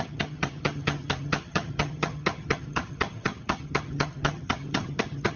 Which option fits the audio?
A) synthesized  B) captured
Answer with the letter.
A